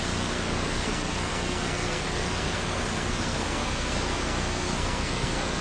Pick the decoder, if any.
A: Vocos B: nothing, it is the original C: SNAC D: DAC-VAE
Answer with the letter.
C